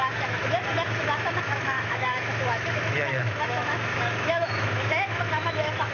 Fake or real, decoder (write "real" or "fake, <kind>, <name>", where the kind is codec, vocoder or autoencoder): fake, autoencoder, DAC-VAE